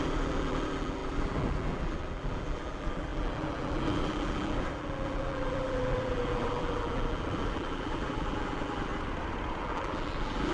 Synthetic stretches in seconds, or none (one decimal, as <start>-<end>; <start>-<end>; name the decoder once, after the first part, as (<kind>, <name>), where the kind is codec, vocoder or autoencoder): 0.0-8.9 (vocoder, BigVGAN v2); 9.6-10.5